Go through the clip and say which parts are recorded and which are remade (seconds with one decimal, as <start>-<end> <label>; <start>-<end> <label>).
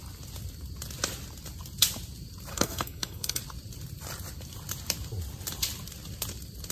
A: 0.0-2.5 recorded; 2.5-3.4 remade; 3.4-6.7 recorded